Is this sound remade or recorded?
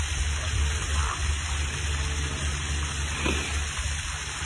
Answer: recorded